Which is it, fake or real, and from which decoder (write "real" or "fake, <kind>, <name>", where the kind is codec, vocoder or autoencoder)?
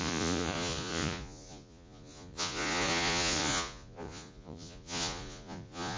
fake, vocoder, Vocos